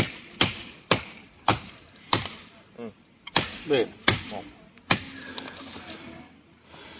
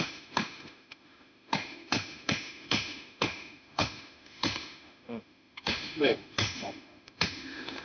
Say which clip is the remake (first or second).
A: second